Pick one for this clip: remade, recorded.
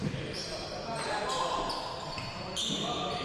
recorded